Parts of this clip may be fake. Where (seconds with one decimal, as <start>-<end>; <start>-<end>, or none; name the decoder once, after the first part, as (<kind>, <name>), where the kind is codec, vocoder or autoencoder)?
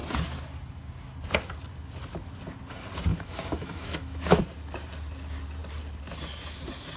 3.1-4.4 (autoencoder, DAC-VAE)